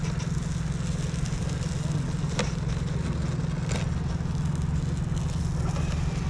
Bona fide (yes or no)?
yes